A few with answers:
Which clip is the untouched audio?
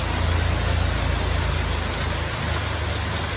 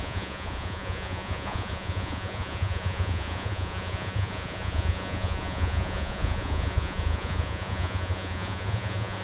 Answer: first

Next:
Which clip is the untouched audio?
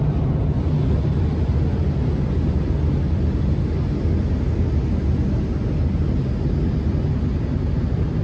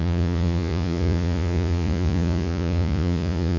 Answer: first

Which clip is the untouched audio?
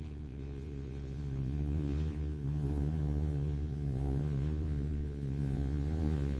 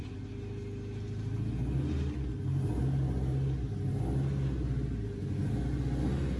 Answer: second